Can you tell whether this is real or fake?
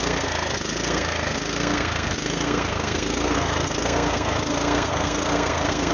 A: fake